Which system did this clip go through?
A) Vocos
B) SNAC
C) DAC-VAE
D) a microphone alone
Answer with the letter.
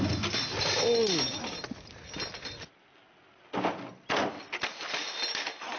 D